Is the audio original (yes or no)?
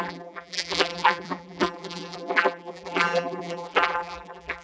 no